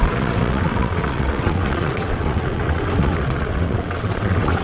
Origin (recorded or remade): remade